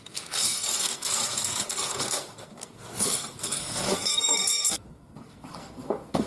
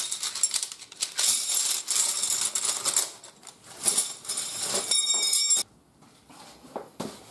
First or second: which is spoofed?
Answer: first